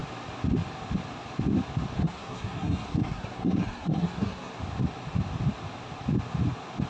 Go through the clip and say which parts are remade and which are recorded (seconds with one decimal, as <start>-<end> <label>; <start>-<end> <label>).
0.0-2.0 recorded; 2.0-4.5 remade; 4.5-6.9 recorded